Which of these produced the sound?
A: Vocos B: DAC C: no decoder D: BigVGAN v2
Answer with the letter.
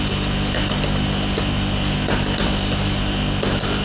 C